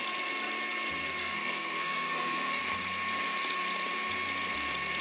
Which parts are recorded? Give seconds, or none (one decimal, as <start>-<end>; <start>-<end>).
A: 0.0-1.2; 2.6-5.0